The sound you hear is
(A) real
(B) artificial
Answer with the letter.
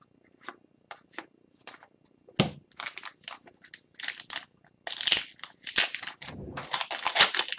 A